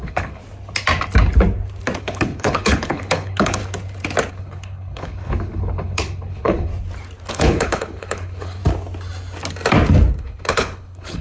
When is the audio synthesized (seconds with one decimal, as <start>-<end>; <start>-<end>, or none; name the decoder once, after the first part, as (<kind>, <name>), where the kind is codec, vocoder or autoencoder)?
0.0-0.4 (codec, HILCodec); 2.0-3.6; 4.3-6.7; 7.3-8.6; 10.2-11.2